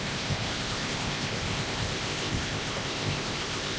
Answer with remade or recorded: remade